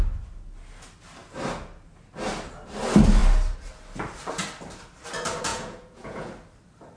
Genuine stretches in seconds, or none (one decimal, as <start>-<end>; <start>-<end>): 0.0-5.5; 6.3-7.0